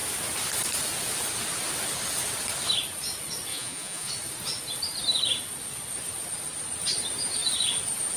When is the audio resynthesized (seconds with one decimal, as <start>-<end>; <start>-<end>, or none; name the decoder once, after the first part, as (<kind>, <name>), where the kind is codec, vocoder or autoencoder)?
3.5-4.1 (vocoder, Vocos)